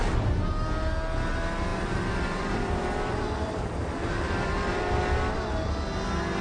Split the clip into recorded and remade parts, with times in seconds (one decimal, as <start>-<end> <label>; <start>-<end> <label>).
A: 0.0-1.7 recorded; 1.7-5.5 remade; 5.5-6.4 recorded